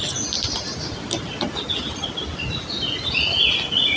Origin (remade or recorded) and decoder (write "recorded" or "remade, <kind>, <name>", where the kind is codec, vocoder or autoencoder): recorded